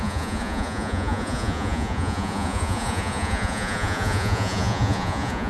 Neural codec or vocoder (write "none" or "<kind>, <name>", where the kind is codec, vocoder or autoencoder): vocoder, Vocos